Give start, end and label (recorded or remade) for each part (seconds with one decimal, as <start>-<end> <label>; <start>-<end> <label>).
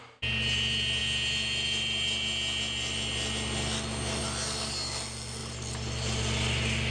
0.0-6.9 recorded